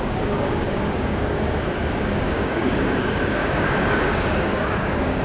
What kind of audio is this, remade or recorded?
remade